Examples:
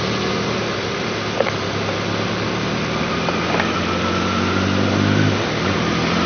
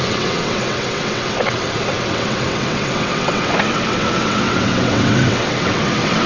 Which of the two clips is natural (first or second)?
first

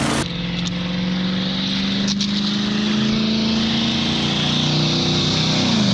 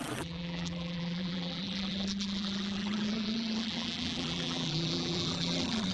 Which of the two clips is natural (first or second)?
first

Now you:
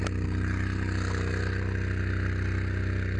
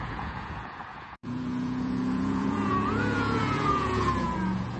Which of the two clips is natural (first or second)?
first